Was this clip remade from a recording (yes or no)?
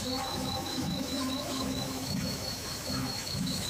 yes